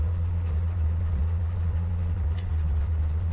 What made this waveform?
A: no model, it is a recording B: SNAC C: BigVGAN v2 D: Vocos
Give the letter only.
D